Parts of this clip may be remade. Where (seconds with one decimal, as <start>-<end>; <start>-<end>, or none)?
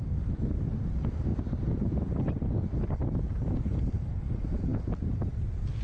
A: none